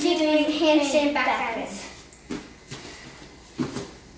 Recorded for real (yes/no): yes